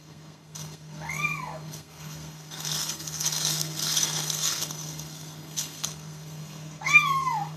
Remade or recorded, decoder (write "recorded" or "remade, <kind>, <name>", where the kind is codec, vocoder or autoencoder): remade, codec, SNAC